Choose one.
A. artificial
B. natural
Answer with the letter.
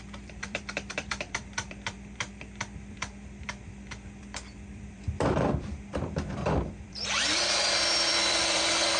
A